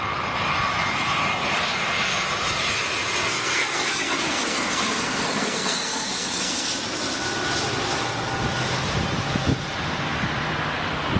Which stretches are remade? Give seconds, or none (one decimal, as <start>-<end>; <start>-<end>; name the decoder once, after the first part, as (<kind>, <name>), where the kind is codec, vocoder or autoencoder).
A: 3.3-6.7 (codec, SNAC)